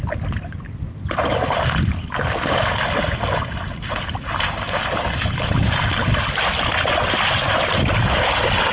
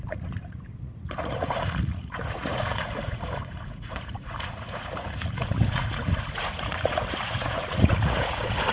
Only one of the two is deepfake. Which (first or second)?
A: second